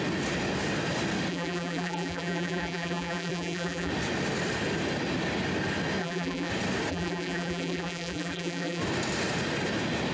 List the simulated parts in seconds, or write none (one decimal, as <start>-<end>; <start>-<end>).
1.3-3.9; 6.0-6.5; 6.9-8.8